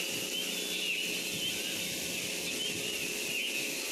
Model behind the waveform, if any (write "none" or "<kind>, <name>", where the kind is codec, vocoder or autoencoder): none